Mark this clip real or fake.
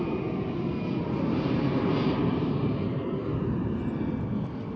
real